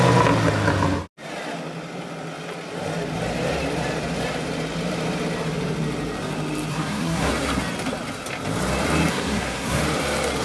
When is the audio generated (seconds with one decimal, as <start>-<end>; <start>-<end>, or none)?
6.7-7.3; 9.1-9.8